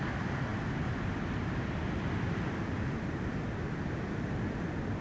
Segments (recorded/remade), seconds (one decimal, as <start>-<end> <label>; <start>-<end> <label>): 0.0-5.0 recorded